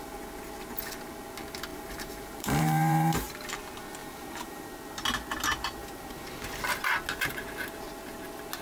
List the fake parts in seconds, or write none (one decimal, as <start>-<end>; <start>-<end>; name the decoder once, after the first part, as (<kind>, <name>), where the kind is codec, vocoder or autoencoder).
1.7-3.5 (vocoder, BigVGAN v2); 4.0-4.7; 5.8-6.4